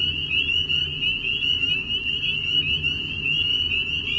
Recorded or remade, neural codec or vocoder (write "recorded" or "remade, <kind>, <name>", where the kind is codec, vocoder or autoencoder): recorded